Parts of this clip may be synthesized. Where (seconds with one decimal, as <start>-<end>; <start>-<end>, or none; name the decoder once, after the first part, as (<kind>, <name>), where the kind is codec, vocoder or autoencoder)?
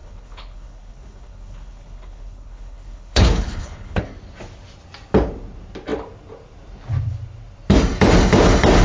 0.0-4.0 (codec, HILCodec)